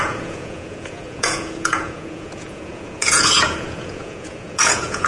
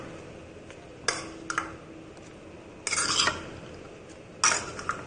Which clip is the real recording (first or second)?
second